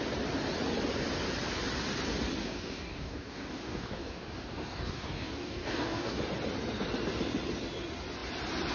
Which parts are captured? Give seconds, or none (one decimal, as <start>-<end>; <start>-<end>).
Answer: 0.0-2.4; 6.2-8.7